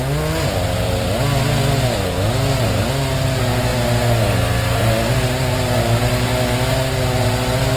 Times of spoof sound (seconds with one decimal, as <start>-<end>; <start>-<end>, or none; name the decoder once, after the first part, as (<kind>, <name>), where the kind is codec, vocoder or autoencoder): none